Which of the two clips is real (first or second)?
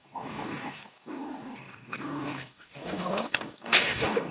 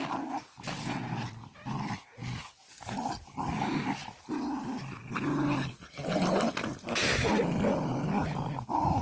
second